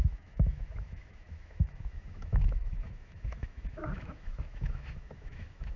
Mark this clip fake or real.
fake